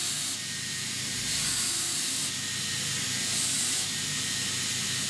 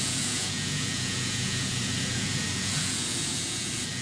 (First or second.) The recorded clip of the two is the first